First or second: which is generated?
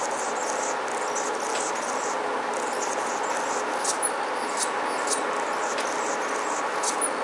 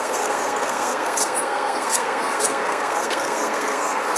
second